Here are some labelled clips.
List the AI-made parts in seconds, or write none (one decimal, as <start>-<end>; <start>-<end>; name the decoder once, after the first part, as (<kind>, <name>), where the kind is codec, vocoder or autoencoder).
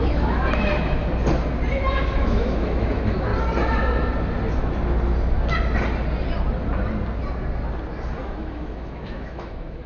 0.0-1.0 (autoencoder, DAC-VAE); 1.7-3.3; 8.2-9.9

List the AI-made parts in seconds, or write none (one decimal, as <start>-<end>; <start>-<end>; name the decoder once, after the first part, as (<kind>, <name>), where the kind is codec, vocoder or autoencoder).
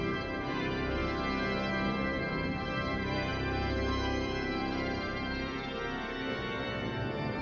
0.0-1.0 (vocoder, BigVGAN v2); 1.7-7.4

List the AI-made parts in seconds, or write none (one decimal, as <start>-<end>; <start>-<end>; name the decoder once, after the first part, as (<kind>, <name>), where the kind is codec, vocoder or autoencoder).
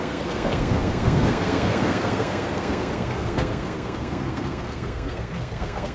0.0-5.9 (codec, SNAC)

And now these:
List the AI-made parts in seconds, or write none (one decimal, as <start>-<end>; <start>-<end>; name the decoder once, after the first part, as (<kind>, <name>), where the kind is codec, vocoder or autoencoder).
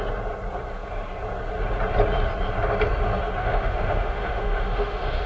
3.4-5.3 (autoencoder, DAC-VAE)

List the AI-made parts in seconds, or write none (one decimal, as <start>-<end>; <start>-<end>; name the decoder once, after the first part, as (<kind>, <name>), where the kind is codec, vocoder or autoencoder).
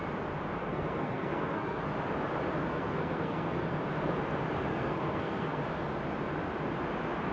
0.6-1.8 (codec, SNAC); 2.7-3.7; 4.7-5.6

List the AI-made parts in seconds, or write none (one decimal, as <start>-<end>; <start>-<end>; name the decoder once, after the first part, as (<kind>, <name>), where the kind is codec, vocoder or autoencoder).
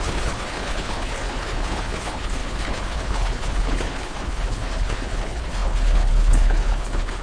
0.0-7.2 (codec, HILCodec)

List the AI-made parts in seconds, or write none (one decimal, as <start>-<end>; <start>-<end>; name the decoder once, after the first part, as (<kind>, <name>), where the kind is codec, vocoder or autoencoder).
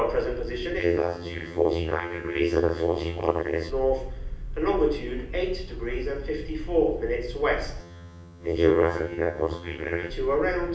0.8-3.7 (vocoder, HiFi-GAN); 7.8-10.1